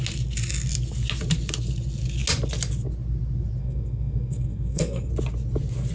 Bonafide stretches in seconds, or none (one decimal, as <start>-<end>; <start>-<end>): 0.0-3.6; 5.1-5.9